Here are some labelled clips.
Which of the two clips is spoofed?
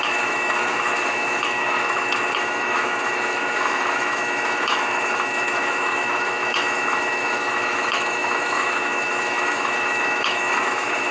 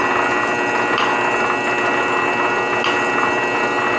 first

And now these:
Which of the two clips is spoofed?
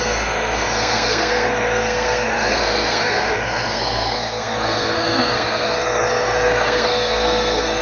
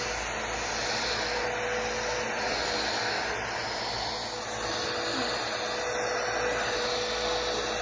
first